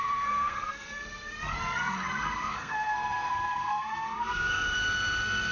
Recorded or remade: remade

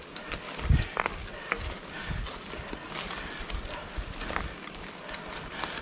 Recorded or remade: recorded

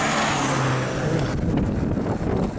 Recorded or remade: recorded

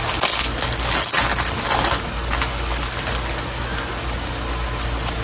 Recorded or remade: recorded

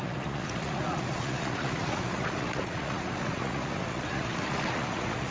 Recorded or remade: remade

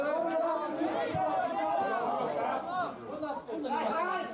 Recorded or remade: recorded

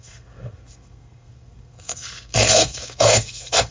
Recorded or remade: remade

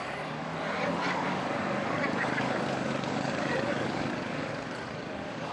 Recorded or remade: remade